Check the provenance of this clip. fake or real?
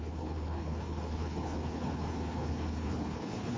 fake